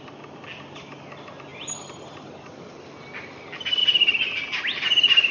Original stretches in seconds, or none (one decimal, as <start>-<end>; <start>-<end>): 0.0-1.5; 2.5-5.3